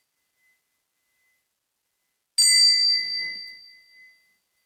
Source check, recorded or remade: recorded